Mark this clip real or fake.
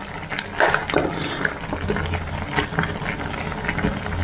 real